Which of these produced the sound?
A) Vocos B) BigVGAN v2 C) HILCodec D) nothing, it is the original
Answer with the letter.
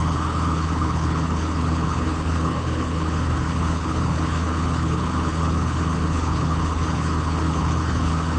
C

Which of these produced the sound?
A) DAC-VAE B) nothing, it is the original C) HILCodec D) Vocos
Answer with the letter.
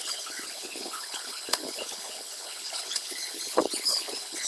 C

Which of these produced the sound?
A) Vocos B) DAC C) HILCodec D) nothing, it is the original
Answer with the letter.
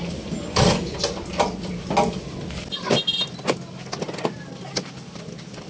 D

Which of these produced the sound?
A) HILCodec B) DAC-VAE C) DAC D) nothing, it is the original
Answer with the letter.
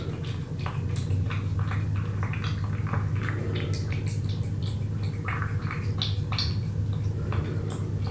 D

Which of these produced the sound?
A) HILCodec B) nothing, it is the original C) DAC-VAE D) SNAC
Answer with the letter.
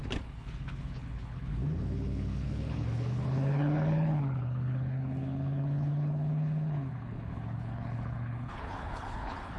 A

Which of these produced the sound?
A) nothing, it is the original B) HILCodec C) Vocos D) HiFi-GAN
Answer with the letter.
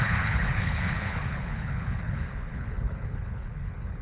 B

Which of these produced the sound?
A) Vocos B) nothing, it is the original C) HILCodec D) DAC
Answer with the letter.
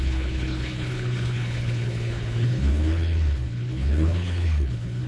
C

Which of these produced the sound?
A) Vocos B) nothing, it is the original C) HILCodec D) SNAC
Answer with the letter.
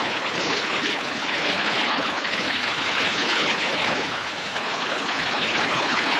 C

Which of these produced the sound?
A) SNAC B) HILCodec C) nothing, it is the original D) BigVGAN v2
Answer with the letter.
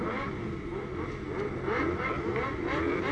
C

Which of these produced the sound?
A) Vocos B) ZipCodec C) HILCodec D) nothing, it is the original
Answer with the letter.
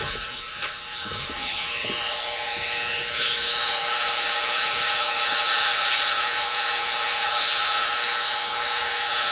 C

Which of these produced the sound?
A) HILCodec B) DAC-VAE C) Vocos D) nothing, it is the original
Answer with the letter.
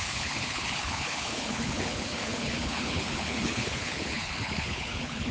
A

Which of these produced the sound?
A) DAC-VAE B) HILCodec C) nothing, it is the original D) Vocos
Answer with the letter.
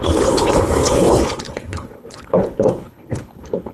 B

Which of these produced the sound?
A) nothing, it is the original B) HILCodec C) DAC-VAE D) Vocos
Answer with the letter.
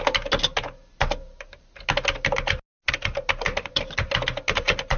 A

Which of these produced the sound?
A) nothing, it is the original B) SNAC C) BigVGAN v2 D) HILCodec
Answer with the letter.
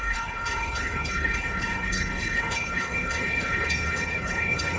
D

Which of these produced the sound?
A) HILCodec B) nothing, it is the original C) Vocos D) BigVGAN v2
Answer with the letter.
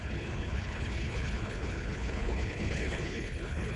A